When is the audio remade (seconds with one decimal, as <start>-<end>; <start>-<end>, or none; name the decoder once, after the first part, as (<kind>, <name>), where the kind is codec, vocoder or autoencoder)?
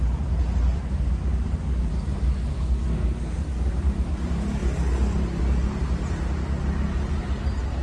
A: 2.5-3.7 (codec, SNAC)